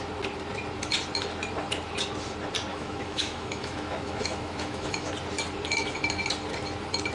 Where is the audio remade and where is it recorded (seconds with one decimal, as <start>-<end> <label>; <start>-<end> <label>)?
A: 0.0-2.7 recorded; 2.7-5.1 remade; 5.1-7.1 recorded